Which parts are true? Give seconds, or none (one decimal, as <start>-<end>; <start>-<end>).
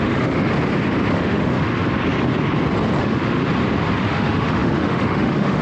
0.5-1.1; 1.7-3.0; 3.4-4.0